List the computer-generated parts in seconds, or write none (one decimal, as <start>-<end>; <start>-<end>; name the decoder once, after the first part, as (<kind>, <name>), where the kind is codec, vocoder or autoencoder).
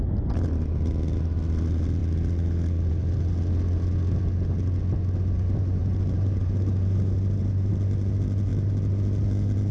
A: 5.8-7.7 (vocoder, BigVGAN v2)